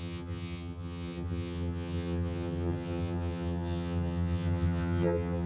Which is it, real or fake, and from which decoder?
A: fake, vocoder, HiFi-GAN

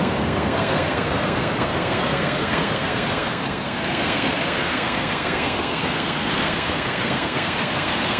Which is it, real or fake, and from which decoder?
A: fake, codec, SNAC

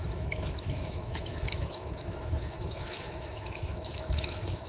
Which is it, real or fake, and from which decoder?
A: fake, autoencoder, DAC-VAE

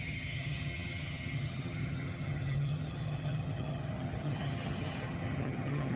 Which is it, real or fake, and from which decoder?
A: fake, vocoder, HiFi-GAN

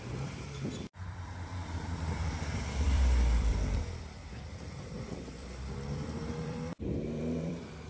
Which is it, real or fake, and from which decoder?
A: fake, vocoder, BigVGAN v2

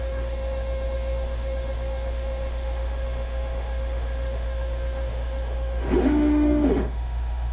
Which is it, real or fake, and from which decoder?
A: fake, autoencoder, DAC-VAE